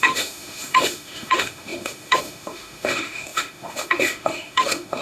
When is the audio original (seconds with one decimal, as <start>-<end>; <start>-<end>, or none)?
none